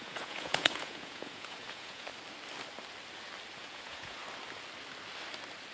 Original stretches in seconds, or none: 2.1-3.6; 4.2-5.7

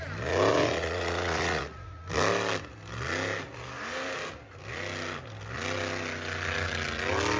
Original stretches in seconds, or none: 0.0-0.5; 2.1-7.4

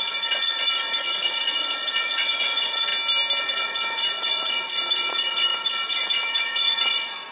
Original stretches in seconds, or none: 2.9-3.4

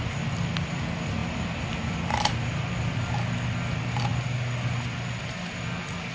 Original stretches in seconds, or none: 0.0-6.1

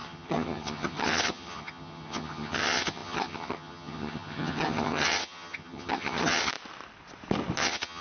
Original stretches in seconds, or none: 6.5-7.6

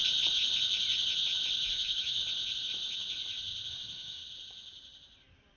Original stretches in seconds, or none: 0.0-1.7; 2.2-3.7; 4.2-5.6